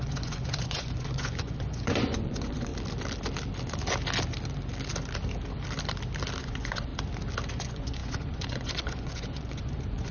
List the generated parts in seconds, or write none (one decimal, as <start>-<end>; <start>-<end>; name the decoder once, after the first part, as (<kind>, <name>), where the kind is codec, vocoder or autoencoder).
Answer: 0.0-2.7 (vocoder, Vocos); 6.4-6.9; 7.5-10.1